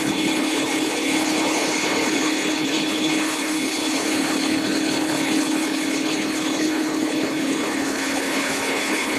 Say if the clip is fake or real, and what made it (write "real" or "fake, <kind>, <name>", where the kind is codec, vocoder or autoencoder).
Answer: fake, codec, HILCodec